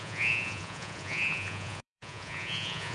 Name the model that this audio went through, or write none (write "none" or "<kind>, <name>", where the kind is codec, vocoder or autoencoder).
vocoder, Vocos